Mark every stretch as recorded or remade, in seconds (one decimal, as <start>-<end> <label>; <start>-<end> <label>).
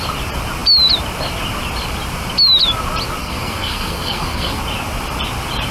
0.0-3.2 recorded; 3.2-4.6 remade; 4.6-5.7 recorded